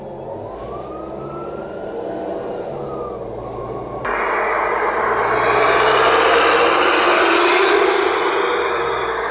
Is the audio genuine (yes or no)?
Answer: yes